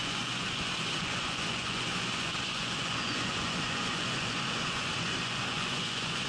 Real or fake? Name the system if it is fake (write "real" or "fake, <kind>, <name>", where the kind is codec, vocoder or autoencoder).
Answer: fake, vocoder, Vocos